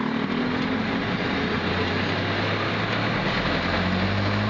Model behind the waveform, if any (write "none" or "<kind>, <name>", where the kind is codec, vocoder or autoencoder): none